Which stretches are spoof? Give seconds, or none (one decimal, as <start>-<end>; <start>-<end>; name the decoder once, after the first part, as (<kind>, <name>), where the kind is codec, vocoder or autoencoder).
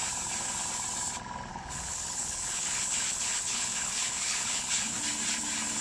1.5-5.0 (codec, HILCodec)